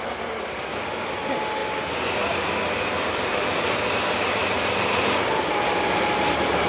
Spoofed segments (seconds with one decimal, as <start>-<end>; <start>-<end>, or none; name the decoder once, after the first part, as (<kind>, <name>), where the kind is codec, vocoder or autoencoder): none